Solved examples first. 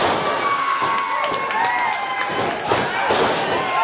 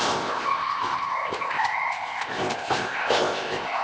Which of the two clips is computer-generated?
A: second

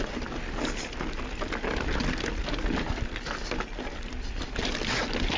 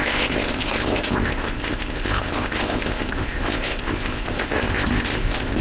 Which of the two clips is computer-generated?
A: second